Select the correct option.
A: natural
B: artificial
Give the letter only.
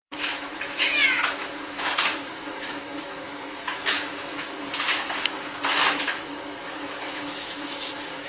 B